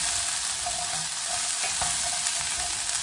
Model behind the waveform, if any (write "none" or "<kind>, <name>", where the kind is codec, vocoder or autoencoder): none